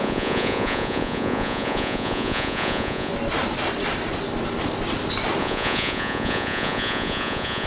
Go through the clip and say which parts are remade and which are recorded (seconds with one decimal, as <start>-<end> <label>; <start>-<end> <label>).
0.0-3.1 remade; 3.1-5.4 recorded; 5.4-7.7 remade